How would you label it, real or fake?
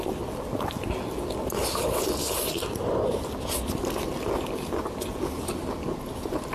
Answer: real